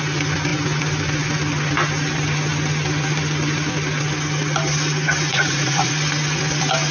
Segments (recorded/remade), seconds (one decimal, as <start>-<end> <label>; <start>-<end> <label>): 0.0-5.3 recorded; 5.3-5.9 remade; 5.9-6.9 recorded